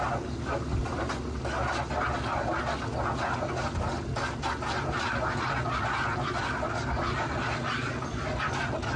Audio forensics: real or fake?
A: real